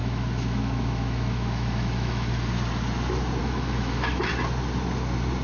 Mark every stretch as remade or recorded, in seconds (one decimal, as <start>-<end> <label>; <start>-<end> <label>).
0.0-2.3 remade; 2.3-3.4 recorded; 3.4-4.3 remade; 4.3-5.4 recorded